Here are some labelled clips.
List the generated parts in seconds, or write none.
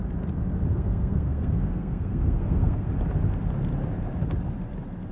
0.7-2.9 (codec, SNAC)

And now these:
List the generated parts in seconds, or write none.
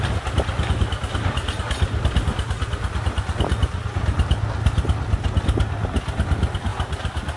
none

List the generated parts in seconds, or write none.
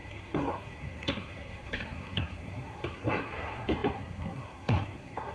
0.0-5.3 (codec, SNAC)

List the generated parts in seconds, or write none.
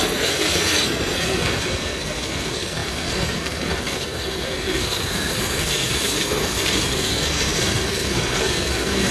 0.0-9.1 (codec, SNAC)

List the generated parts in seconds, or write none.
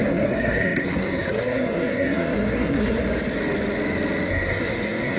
0.0-3.0 (codec, SNAC); 4.3-5.2